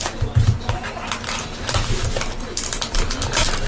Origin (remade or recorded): recorded